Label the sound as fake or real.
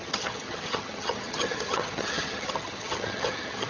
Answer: fake